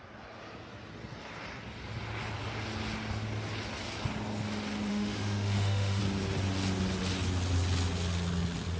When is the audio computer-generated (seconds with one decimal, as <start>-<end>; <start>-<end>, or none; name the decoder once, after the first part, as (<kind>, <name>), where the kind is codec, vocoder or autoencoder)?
4.9-6.0 (autoencoder, DAC-VAE)